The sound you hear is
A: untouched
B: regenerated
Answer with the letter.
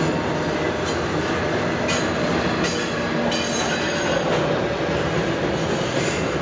A